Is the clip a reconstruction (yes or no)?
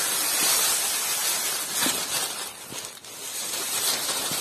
no